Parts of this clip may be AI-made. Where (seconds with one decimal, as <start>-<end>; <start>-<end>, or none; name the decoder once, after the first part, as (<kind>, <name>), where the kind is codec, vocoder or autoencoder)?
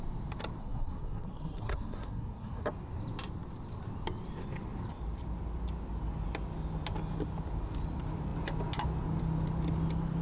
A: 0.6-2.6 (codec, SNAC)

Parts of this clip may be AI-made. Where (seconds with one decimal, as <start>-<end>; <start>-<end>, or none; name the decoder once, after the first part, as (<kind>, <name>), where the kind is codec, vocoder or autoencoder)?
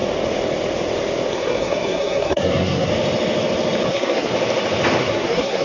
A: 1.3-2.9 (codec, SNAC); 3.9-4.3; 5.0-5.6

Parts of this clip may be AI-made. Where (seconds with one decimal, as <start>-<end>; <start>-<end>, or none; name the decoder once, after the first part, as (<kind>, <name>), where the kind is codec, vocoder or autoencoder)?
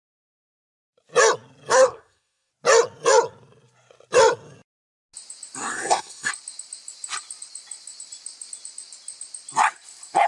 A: 1.7-2.5 (codec, SNAC); 5.6-6.3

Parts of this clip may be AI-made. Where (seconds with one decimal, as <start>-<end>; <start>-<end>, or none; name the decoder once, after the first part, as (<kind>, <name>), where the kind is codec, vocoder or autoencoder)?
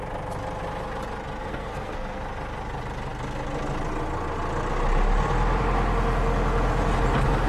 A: 1.4-2.2 (codec, SNAC)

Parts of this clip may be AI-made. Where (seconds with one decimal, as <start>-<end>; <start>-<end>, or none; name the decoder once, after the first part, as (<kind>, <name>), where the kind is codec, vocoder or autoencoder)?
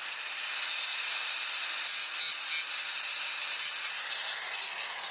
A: none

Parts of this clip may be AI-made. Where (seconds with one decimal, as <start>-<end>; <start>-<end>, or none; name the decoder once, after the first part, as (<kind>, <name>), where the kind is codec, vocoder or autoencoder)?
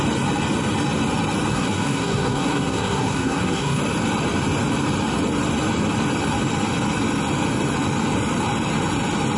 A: 1.5-3.8 (codec, SNAC)